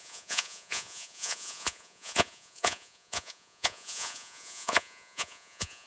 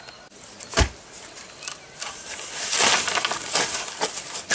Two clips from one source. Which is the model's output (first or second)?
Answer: first